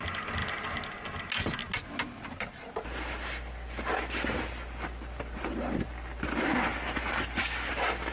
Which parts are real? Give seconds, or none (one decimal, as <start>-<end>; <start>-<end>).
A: 0.0-8.1

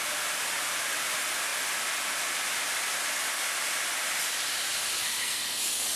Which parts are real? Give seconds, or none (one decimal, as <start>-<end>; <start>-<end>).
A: 0.0-5.0